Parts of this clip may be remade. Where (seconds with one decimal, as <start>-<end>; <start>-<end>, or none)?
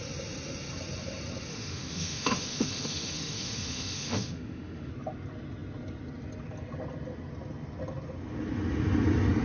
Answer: 1.5-4.9